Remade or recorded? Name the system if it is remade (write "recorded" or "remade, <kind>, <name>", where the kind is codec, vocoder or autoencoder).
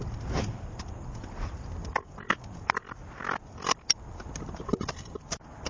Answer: recorded